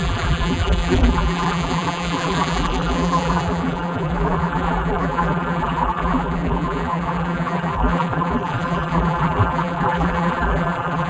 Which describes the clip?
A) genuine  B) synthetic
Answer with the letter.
B